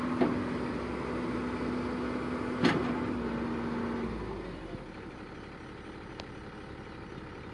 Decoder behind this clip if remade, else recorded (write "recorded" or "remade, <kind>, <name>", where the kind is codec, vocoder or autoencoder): recorded